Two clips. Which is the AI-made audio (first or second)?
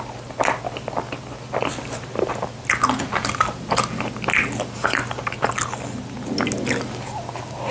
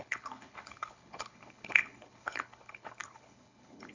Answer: second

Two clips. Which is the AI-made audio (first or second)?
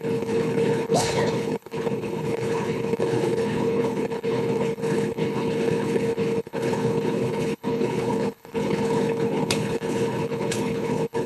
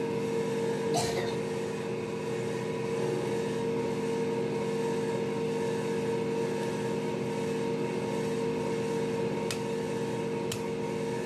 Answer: first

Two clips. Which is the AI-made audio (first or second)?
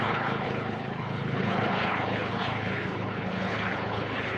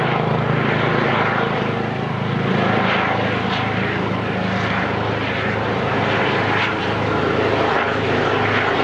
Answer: first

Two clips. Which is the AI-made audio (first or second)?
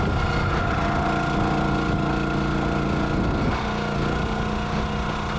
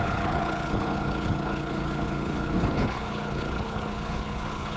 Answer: second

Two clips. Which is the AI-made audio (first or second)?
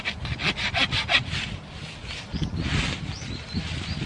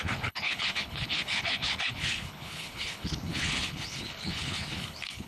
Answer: second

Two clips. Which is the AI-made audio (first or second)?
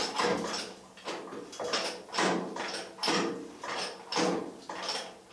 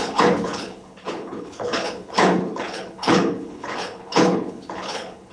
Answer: second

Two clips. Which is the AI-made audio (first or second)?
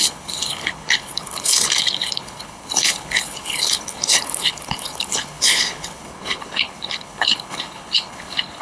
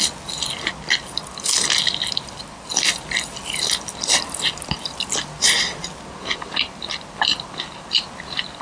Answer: first